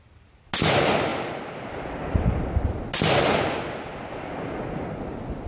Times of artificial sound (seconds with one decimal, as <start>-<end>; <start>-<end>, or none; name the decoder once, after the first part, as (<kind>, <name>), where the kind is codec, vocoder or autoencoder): none